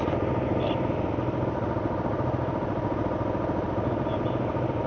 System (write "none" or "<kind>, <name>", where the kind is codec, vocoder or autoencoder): none